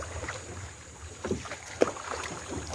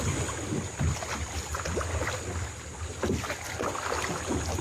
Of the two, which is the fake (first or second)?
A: first